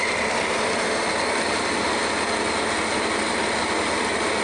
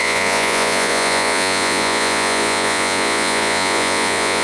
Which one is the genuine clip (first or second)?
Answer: first